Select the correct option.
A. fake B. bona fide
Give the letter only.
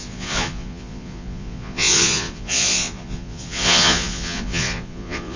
A